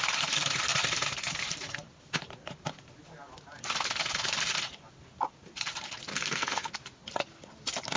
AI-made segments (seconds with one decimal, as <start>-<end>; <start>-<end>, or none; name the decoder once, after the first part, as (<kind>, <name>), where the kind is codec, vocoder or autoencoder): 6.1-6.7 (codec, SNAC)